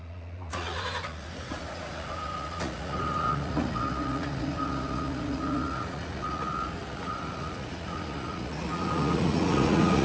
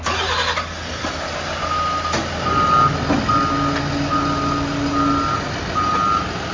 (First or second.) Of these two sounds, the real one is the second